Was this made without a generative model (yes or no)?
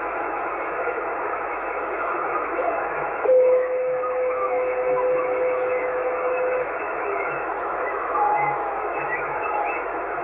no